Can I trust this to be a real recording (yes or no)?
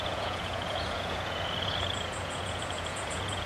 no